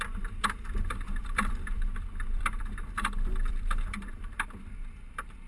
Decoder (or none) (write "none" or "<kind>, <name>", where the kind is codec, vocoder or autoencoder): vocoder, BigVGAN v2